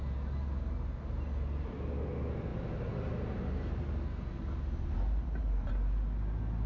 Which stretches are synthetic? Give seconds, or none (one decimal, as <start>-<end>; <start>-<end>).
none